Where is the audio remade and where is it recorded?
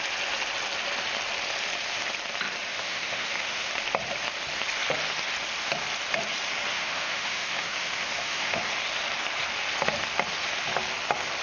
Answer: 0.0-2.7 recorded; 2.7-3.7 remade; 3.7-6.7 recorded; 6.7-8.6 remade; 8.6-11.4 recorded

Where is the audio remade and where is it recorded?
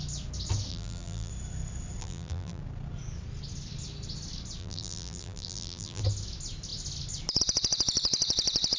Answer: 0.0-0.7 recorded; 0.7-1.3 remade; 1.3-2.0 recorded; 2.0-2.6 remade; 2.6-4.6 recorded; 4.6-6.0 remade; 6.0-8.8 recorded